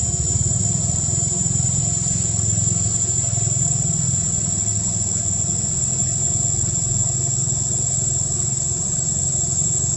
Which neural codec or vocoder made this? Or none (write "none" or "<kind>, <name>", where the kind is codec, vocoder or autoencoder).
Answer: none